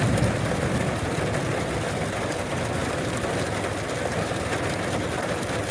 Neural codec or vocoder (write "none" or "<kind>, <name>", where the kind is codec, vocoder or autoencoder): vocoder, BigVGAN v2